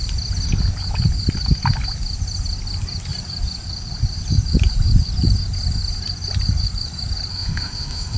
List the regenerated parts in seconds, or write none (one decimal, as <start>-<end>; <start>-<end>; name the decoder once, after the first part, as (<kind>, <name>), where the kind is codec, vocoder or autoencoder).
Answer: 7.3-8.2 (autoencoder, DAC-VAE)